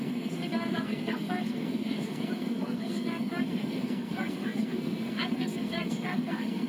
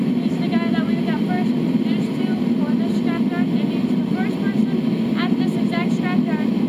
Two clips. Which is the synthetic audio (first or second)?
first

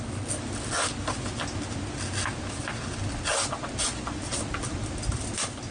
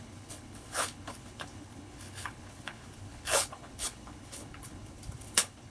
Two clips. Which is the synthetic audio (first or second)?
second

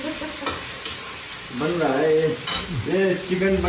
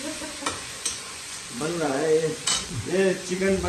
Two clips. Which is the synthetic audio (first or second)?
second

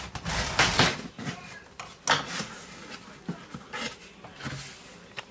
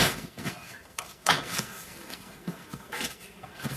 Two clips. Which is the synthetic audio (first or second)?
second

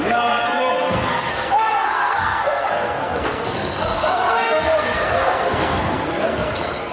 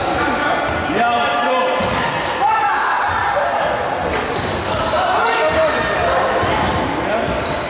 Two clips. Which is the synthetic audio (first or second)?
first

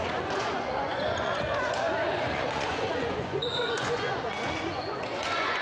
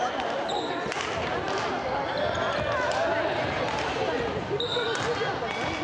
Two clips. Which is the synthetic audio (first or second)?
first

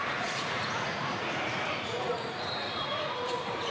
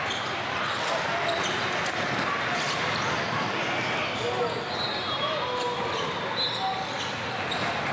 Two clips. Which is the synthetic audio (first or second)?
first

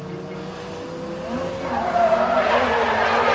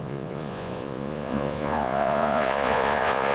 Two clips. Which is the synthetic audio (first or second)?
second